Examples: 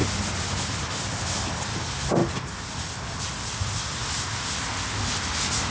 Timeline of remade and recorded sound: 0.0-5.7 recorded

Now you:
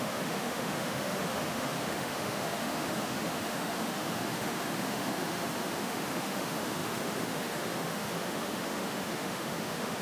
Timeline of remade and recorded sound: 0.0-10.0 remade

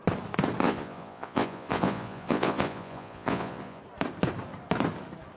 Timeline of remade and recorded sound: 0.0-0.6 recorded; 0.6-3.8 remade; 3.8-5.4 recorded

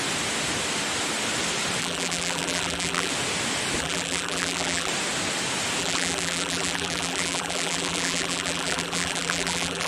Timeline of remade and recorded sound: 0.0-1.8 recorded; 1.8-3.1 remade; 3.1-3.8 recorded; 3.8-4.9 remade; 4.9-5.8 recorded; 5.8-9.9 remade

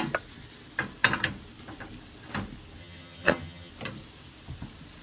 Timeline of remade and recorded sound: 0.0-2.8 recorded; 2.8-3.7 remade; 3.7-5.0 recorded